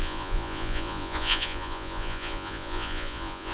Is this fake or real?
fake